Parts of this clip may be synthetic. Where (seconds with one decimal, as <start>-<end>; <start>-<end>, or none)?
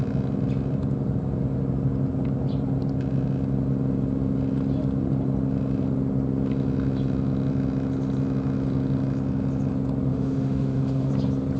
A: 10.1-11.1